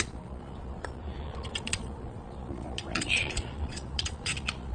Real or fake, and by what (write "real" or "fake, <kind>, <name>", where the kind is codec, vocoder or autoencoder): fake, vocoder, Vocos